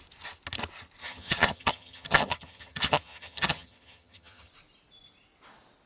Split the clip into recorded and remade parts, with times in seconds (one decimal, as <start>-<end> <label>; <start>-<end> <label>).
0.0-1.0 recorded; 1.0-4.5 remade; 4.5-5.9 recorded